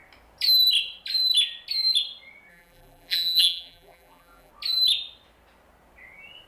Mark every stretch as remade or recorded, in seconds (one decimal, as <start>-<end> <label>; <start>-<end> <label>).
0.0-2.5 recorded; 2.5-4.5 remade; 4.5-6.5 recorded